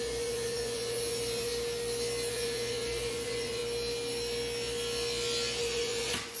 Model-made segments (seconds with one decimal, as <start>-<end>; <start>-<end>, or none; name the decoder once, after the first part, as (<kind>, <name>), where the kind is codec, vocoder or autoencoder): 0.0-1.5 (vocoder, Vocos); 2.3-3.6; 5.6-6.4